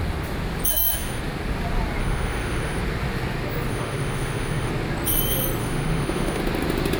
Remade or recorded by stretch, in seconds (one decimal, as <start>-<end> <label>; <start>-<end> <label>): 0.0-0.7 recorded; 0.7-1.2 remade; 1.2-2.0 recorded; 2.0-2.8 remade; 2.8-3.7 recorded; 3.7-4.7 remade; 4.7-5.6 recorded; 5.6-6.4 remade; 6.4-7.0 recorded